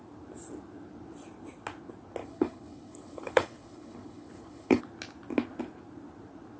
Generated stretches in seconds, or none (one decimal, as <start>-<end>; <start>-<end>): 2.2-4.8